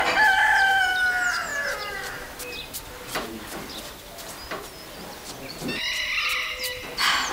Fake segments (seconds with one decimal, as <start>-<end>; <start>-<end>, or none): none